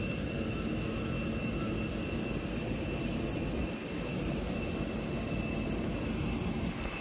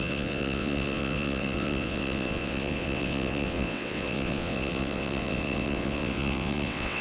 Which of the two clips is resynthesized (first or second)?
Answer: second